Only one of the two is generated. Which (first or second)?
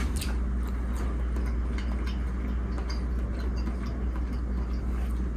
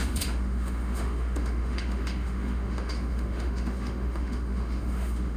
second